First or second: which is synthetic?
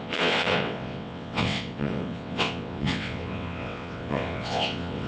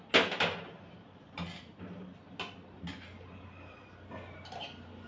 first